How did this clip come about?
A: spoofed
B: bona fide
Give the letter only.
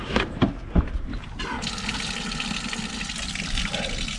B